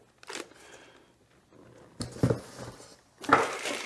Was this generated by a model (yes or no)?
no